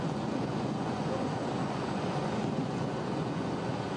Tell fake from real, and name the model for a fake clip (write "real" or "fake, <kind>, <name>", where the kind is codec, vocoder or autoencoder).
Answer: fake, vocoder, Vocos